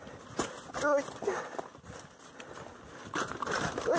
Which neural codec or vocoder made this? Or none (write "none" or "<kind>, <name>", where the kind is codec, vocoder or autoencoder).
none